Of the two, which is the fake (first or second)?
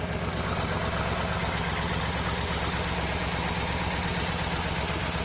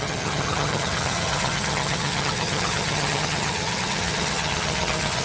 second